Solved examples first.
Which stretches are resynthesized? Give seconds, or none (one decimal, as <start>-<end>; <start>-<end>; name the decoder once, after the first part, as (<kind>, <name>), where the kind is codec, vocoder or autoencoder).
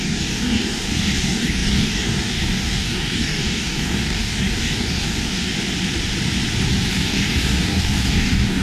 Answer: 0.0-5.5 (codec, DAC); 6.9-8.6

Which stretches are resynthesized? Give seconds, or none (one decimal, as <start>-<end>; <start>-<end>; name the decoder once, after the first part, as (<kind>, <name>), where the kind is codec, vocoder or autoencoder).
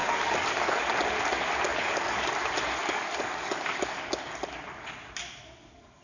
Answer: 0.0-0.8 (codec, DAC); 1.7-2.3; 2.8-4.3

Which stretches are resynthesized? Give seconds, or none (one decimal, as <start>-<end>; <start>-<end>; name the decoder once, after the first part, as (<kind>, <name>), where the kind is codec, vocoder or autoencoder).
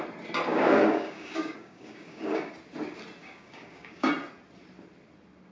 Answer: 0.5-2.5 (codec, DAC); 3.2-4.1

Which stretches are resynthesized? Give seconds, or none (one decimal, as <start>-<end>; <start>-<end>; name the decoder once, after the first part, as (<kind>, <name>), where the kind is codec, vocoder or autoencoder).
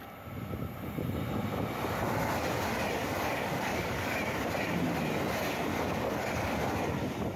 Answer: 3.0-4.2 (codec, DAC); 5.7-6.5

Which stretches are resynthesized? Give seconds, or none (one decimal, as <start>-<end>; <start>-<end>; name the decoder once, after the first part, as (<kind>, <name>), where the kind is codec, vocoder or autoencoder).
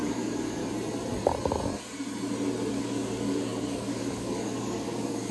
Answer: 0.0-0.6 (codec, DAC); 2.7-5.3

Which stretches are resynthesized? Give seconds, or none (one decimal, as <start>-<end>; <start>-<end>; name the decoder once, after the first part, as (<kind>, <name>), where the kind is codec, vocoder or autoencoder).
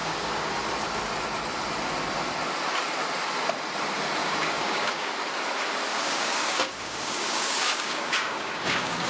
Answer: 0.0-0.5 (codec, DAC); 4.2-5.1; 5.9-9.1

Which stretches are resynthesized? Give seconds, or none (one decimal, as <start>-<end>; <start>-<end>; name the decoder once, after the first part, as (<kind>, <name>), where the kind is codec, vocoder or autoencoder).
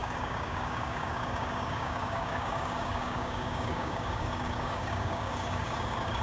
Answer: 0.0-6.2 (codec, DAC)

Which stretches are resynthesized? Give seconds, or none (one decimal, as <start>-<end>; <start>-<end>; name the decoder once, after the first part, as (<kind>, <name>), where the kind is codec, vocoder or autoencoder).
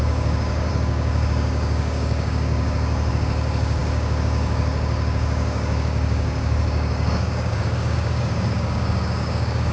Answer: 0.0-9.7 (codec, DAC)